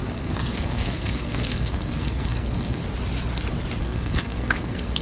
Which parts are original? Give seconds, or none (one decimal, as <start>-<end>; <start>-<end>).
2.8-3.8